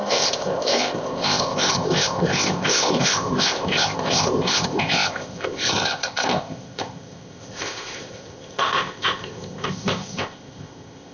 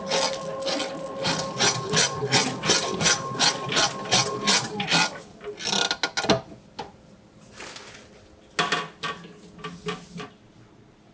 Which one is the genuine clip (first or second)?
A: second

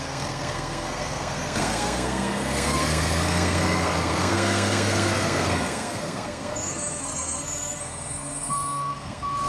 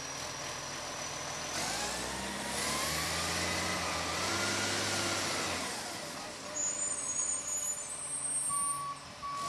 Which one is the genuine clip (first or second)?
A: second